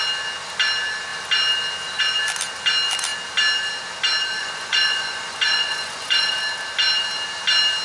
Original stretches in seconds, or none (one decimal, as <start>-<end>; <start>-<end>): 0.0-4.4; 6.4-7.8